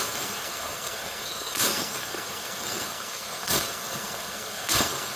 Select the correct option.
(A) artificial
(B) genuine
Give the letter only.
A